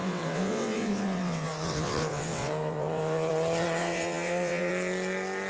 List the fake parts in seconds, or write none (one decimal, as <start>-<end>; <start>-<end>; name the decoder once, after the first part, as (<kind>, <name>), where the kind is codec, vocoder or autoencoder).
0.0-3.3 (vocoder, WaveNeXt); 3.8-4.7